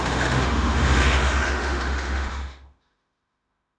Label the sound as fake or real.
fake